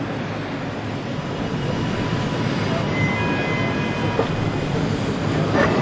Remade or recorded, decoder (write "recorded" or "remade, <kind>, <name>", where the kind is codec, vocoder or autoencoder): recorded